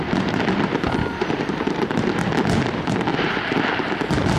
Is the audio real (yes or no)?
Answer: no